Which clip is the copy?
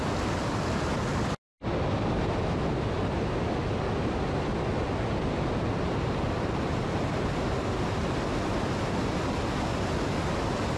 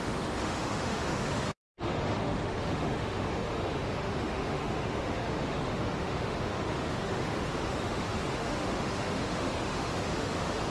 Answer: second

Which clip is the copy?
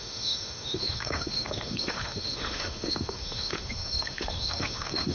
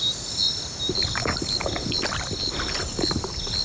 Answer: first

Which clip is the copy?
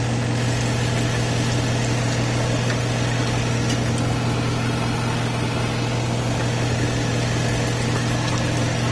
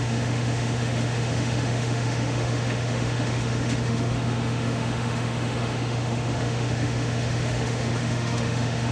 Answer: second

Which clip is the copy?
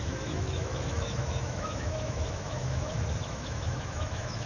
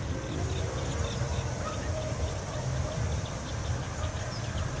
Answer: first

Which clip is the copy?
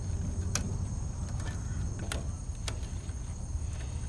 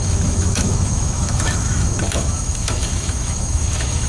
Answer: second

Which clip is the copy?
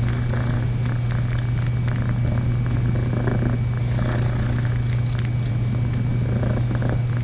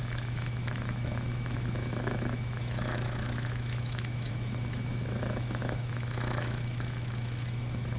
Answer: second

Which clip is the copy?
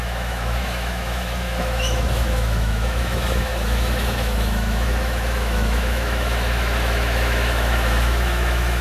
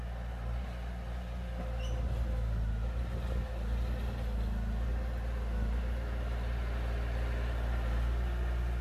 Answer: first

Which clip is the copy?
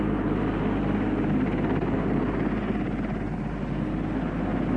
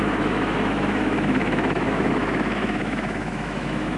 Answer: second